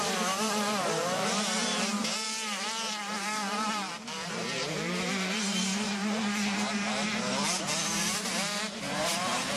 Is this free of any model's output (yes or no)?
no